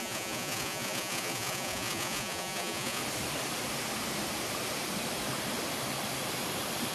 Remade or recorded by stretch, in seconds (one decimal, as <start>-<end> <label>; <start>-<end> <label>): 0.0-3.0 remade; 3.0-6.9 recorded